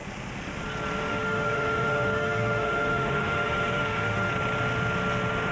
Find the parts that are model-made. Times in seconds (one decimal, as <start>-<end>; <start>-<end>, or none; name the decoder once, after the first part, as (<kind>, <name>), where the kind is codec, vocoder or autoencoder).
1.0-4.3 (autoencoder, DAC-VAE)